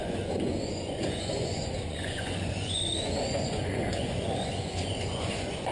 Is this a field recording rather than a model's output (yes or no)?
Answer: no